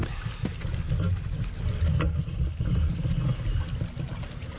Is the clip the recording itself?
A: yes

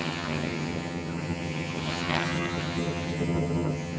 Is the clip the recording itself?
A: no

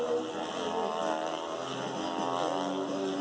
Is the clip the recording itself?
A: yes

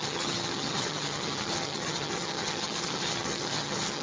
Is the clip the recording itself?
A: no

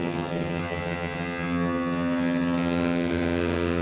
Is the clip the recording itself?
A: no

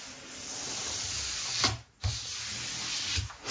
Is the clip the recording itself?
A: yes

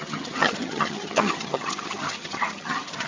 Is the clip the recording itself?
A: no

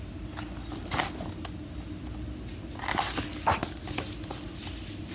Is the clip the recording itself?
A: yes